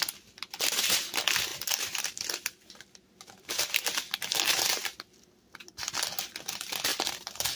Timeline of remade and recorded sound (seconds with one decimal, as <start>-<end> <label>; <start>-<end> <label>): 0.0-6.9 recorded; 6.9-7.6 remade